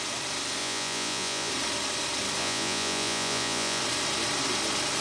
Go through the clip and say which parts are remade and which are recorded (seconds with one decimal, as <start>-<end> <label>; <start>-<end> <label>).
0.0-0.6 recorded; 0.6-1.5 remade; 1.5-2.4 recorded; 2.4-3.8 remade; 3.8-5.0 recorded

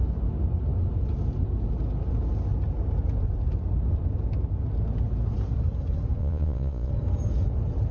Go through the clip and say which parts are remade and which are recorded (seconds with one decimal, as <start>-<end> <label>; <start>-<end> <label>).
0.0-6.2 recorded; 6.2-6.9 remade; 6.9-7.9 recorded

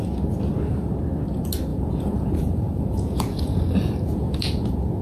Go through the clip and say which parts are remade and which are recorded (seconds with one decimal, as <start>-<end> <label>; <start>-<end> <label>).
0.0-1.7 recorded; 1.7-5.0 remade

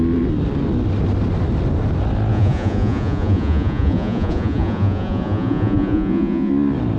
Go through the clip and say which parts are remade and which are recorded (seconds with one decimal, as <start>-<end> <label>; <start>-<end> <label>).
0.0-2.3 recorded; 2.3-6.5 remade; 6.5-7.0 recorded